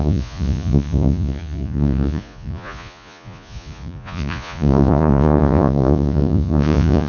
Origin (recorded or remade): remade